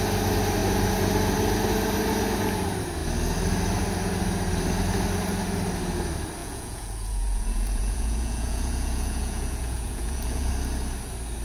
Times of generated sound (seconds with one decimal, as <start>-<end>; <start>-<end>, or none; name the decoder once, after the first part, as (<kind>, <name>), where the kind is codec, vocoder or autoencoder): 6.4-10.5 (vocoder, Vocos)